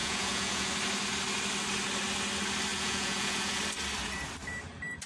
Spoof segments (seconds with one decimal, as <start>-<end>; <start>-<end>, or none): 0.0-0.7; 2.7-3.6